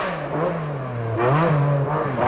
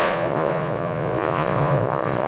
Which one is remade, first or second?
second